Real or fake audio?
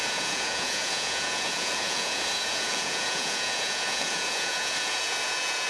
fake